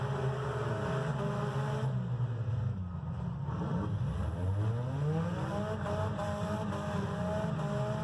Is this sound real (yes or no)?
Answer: yes